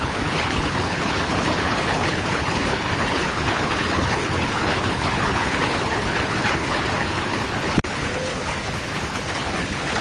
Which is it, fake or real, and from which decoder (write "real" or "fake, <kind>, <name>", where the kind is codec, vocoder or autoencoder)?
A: fake, codec, HILCodec